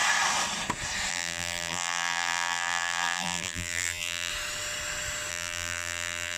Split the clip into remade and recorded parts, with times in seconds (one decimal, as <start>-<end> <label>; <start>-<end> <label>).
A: 0.0-1.1 recorded; 1.1-4.3 remade; 4.3-5.3 recorded; 5.3-6.4 remade